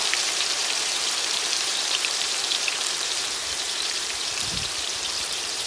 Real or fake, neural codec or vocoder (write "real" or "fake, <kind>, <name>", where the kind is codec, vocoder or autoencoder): fake, vocoder, BigVGAN v2